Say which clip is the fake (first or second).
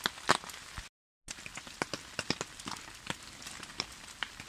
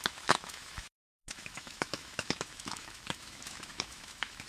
second